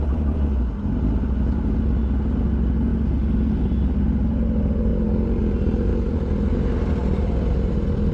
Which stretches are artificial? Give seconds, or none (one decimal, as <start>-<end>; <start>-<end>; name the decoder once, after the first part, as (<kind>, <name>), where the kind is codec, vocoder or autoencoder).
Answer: none